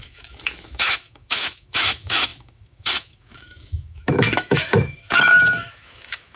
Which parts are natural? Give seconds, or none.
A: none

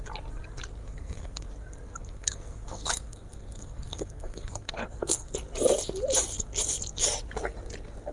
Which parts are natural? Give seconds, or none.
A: 0.0-0.8; 1.5-2.0; 5.3-8.1

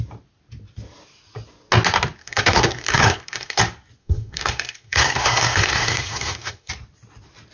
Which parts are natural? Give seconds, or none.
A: 0.0-2.2; 3.6-4.0; 6.7-7.5

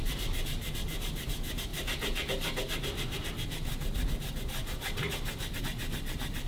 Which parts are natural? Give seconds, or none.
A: 0.0-6.5

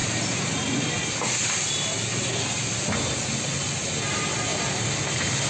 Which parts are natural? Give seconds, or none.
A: 0.0-2.1; 2.9-4.5

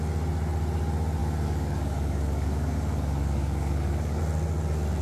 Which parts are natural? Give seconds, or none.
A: 0.0-1.2; 4.2-5.0